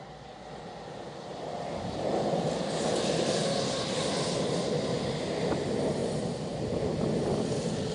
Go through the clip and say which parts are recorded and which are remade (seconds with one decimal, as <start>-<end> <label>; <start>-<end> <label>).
0.0-7.9 recorded